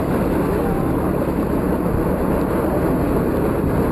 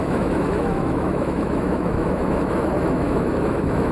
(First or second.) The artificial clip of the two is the second